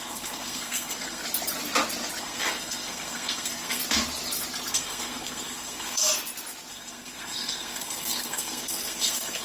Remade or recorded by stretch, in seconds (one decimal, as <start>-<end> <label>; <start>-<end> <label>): 0.0-1.2 remade; 1.2-2.2 recorded; 2.2-3.8 remade; 3.8-4.7 recorded; 4.7-6.0 remade; 6.0-6.7 recorded; 6.7-9.4 remade